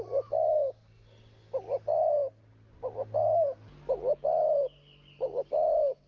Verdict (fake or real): real